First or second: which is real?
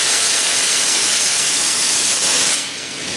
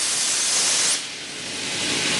second